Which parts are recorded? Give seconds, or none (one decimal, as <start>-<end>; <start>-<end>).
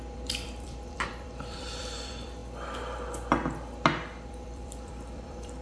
2.4-4.3